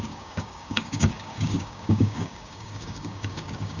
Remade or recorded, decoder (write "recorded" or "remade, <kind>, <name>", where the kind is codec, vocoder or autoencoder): remade, codec, DAC